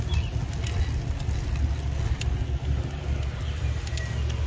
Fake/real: real